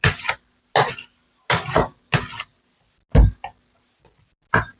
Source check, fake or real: real